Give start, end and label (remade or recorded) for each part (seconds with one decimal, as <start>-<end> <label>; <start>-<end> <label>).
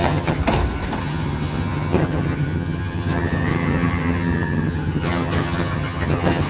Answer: 0.0-0.4 remade; 0.4-1.0 recorded; 1.0-6.5 remade